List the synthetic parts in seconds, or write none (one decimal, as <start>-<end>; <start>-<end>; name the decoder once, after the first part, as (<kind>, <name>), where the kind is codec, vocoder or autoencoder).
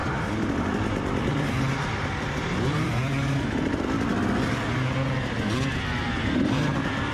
0.9-4.1 (vocoder, BigVGAN v2); 5.7-7.1